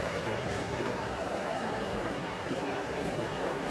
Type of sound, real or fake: fake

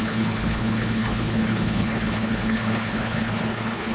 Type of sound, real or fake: fake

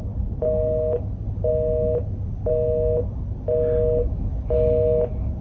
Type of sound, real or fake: real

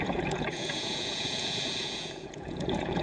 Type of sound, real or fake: fake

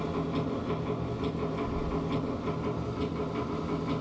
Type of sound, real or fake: real